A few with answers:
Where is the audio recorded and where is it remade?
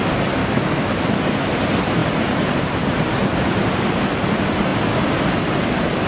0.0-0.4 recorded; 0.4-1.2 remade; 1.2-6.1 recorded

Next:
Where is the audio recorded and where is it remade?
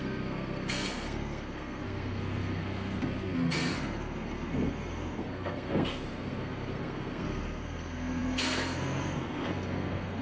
0.0-10.2 remade